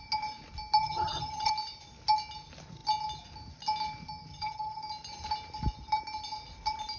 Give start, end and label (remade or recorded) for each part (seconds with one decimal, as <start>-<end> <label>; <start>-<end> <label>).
0.0-0.8 recorded; 0.8-1.5 remade; 1.5-4.3 recorded; 4.3-4.8 remade; 4.8-7.0 recorded

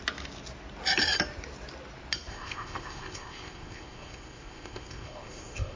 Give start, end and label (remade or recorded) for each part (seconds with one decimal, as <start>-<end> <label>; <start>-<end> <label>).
0.0-2.3 recorded; 2.3-5.8 remade

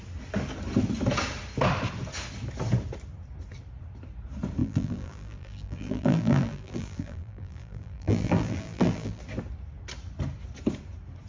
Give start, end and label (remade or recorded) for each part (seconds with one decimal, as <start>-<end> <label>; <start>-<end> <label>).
0.0-4.6 recorded; 4.6-9.2 remade; 9.2-11.3 recorded

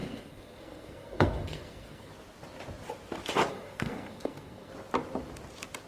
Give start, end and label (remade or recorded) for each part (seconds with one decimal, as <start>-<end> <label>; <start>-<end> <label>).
0.0-2.1 remade; 2.1-3.5 recorded; 3.5-4.7 remade; 4.7-5.9 recorded